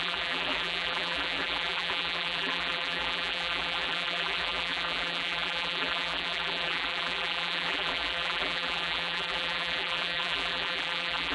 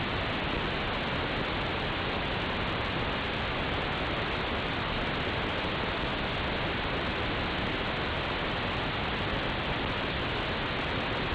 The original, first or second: second